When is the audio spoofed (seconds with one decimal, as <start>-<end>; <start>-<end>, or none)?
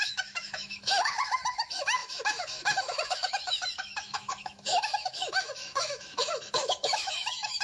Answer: 0.0-7.6